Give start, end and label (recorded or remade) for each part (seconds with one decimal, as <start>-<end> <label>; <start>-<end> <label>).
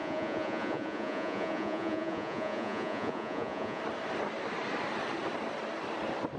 0.0-3.8 remade; 3.8-6.4 recorded